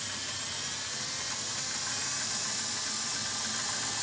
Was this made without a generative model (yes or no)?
yes